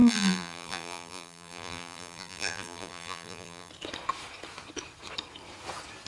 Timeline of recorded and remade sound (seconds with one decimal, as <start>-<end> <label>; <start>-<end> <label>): 0.0-3.7 remade; 3.7-6.1 recorded